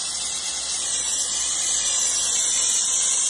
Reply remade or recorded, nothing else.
recorded